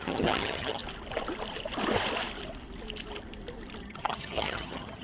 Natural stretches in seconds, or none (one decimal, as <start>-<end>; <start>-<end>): 0.8-3.8